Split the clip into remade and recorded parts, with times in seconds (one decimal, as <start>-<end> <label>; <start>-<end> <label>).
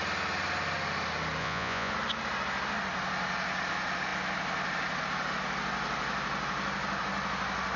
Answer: 0.0-1.4 recorded; 1.4-1.9 remade; 1.9-7.8 recorded